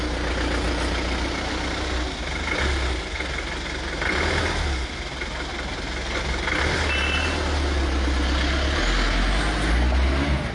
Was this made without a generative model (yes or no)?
yes